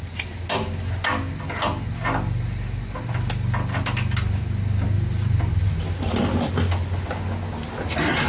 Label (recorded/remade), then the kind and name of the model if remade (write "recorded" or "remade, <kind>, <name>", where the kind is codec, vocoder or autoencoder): recorded